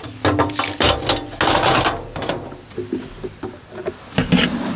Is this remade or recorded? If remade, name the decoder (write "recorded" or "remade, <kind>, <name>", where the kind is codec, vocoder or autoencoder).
recorded